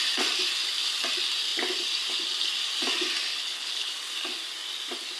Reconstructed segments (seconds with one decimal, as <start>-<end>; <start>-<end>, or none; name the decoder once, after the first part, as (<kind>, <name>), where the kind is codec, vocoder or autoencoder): 3.3-3.9 (codec, HILCodec)